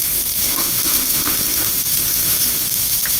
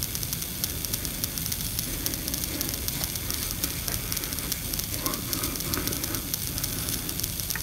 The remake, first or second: first